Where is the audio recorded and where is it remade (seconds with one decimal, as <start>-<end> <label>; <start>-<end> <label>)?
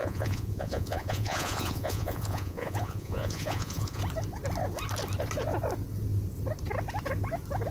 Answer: 0.0-4.0 remade; 4.0-7.7 recorded